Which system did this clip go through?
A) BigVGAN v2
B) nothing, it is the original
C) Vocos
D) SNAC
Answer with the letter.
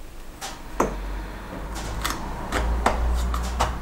B